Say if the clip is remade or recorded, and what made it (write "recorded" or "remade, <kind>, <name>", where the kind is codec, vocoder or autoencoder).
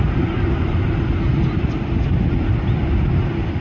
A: recorded